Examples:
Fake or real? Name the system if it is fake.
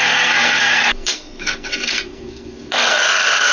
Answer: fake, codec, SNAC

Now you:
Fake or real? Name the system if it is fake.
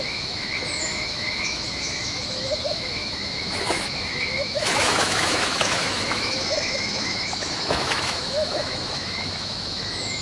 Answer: fake, autoencoder, DAC-VAE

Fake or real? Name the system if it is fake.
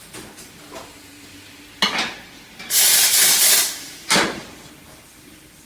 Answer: real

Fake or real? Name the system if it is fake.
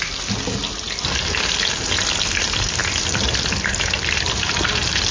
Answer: real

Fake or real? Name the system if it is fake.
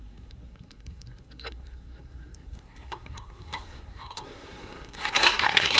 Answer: fake, codec, SNAC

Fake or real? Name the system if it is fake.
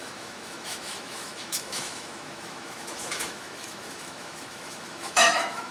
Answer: fake, autoencoder, DAC-VAE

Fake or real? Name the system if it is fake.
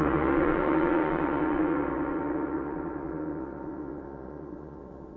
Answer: fake, vocoder, Vocos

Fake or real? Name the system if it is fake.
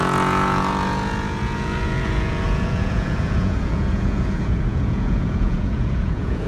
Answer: fake, vocoder, Vocos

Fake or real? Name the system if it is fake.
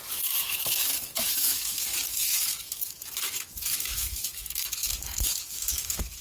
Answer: fake, autoencoder, DAC-VAE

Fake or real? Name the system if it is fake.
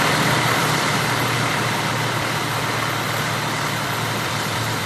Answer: fake, vocoder, BigVGAN v2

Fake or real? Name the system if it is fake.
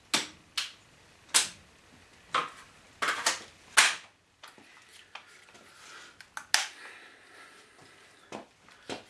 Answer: real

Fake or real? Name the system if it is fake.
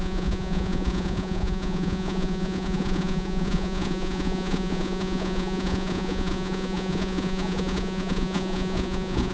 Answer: fake, vocoder, Vocos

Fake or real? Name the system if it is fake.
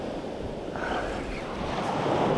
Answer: real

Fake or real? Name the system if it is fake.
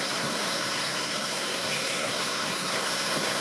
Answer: fake, codec, SNAC